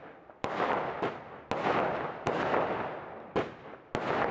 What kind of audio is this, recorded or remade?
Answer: recorded